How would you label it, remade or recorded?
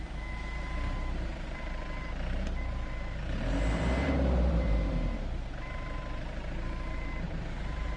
remade